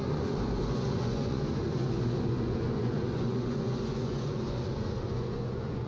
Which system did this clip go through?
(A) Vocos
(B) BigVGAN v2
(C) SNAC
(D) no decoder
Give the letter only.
A